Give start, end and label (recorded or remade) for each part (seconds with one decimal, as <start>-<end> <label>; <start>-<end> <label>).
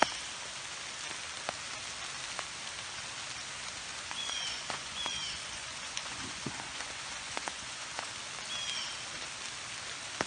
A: 0.0-3.9 recorded; 3.9-8.1 remade; 8.1-10.3 recorded